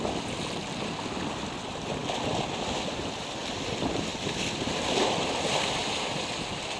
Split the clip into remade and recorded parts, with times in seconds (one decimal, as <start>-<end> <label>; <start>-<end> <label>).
0.0-6.8 recorded

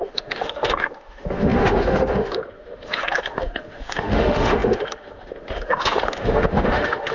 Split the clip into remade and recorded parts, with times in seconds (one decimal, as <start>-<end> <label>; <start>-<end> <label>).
0.0-7.1 remade

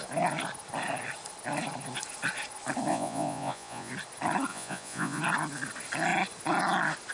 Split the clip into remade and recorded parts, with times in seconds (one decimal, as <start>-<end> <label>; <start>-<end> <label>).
0.0-2.9 recorded; 2.9-3.9 remade; 3.9-4.5 recorded; 4.5-5.2 remade; 5.2-7.1 recorded

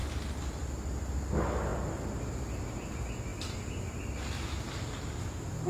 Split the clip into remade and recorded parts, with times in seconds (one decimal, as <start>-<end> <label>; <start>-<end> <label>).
0.0-1.7 remade; 1.7-2.2 recorded; 2.2-5.7 remade

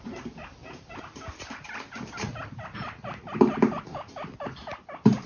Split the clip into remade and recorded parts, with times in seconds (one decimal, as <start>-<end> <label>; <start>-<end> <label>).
0.0-5.3 recorded

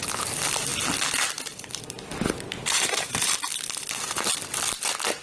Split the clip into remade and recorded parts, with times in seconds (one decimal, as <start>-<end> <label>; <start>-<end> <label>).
0.0-5.2 recorded

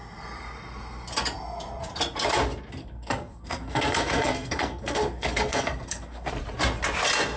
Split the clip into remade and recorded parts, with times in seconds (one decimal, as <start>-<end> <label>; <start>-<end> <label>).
0.0-2.8 recorded; 2.8-6.3 remade; 6.3-7.4 recorded

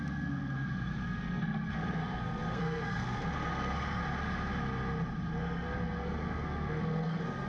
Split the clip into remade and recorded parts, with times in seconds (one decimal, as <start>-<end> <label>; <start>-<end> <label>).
0.0-4.0 remade; 4.0-5.4 recorded; 5.4-7.5 remade